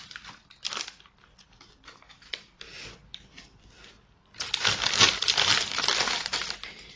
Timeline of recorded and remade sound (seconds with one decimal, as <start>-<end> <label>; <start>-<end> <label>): 0.0-7.0 recorded